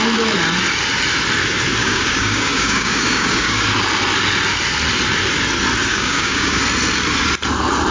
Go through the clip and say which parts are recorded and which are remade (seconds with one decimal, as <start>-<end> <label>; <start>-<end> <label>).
0.0-1.8 recorded; 1.8-3.6 remade; 3.6-5.9 recorded; 5.9-6.6 remade; 6.6-7.9 recorded